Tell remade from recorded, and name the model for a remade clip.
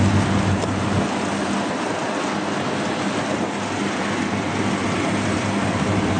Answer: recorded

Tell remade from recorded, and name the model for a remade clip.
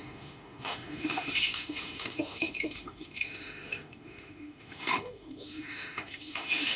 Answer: remade, autoencoder, DAC-VAE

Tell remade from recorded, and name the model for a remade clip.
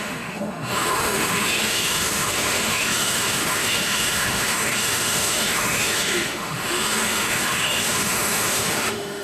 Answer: remade, autoencoder, DAC-VAE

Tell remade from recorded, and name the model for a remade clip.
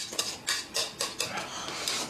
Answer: recorded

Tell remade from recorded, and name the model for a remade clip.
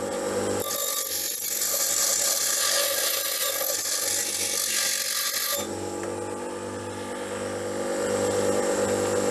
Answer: recorded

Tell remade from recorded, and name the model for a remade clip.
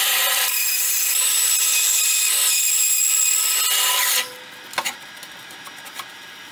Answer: recorded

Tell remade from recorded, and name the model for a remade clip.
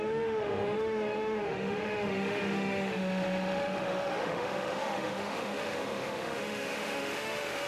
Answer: remade, autoencoder, DAC-VAE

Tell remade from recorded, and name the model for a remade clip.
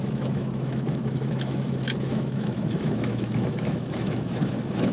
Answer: remade, autoencoder, DAC-VAE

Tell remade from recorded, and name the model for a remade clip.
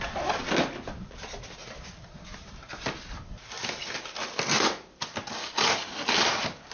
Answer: recorded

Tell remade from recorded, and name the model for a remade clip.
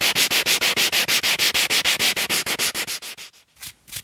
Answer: recorded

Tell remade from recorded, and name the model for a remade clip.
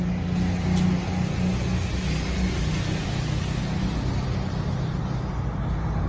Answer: recorded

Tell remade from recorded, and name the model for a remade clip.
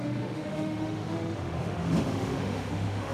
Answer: remade, autoencoder, DAC-VAE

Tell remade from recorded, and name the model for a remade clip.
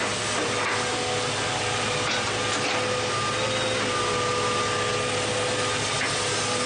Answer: recorded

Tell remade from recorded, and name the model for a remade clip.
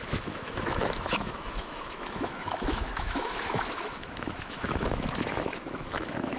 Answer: remade, autoencoder, DAC-VAE